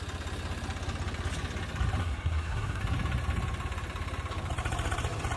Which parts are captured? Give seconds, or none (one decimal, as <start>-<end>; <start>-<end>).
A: 0.0-2.0; 2.8-5.4